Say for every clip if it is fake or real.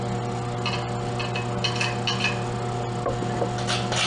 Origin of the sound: real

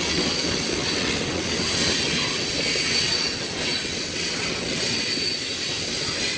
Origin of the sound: fake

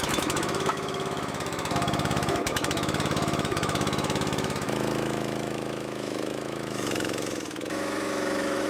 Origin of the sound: fake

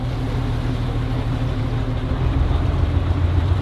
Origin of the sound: fake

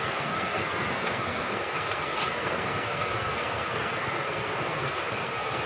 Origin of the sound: fake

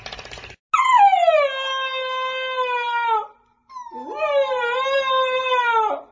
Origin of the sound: real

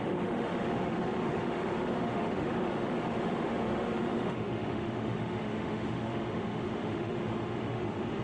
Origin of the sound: fake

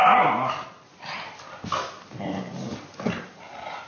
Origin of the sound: real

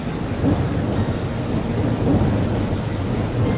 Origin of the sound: real